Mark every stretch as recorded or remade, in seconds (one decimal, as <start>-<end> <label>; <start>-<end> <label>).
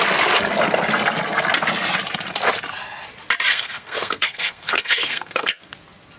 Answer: 0.0-3.5 recorded; 3.5-5.7 remade; 5.7-6.2 recorded